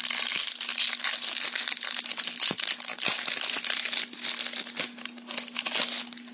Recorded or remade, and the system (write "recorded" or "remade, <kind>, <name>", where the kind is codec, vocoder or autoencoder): recorded